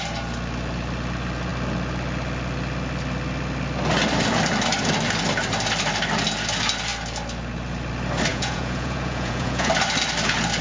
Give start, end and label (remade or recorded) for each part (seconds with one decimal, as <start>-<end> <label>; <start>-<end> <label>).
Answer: 0.0-8.3 recorded; 8.3-9.7 remade; 9.7-10.6 recorded